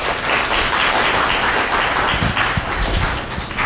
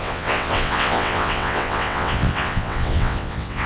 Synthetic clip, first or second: second